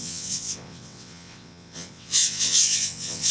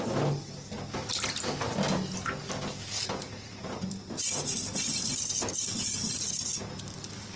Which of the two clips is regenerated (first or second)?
first